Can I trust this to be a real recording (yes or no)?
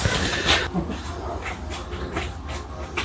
yes